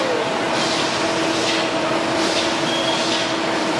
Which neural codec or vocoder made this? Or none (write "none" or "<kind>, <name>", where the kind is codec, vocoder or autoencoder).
none